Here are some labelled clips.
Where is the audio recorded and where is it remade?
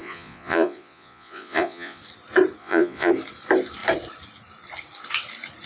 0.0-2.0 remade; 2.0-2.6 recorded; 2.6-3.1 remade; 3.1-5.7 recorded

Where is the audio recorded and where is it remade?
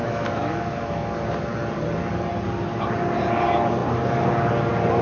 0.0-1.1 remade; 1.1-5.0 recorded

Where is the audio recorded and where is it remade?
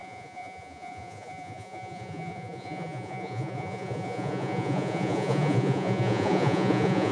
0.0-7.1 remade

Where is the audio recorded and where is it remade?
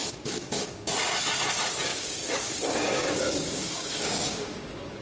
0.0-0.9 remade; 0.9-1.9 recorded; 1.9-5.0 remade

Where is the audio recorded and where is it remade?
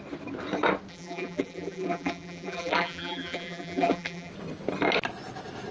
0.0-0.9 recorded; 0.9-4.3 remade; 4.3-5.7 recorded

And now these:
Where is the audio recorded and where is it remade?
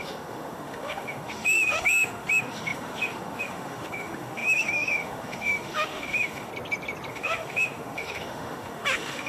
0.0-6.5 remade; 6.5-7.1 recorded; 7.1-9.3 remade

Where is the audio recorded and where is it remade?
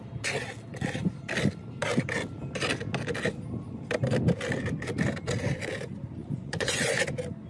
0.0-6.2 recorded; 6.2-6.9 remade; 6.9-7.5 recorded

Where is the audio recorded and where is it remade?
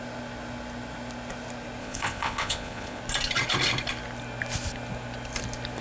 0.0-1.8 recorded; 1.8-3.0 remade; 3.0-5.8 recorded